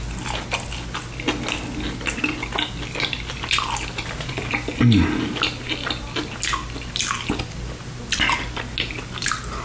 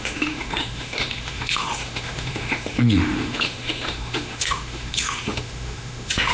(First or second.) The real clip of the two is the first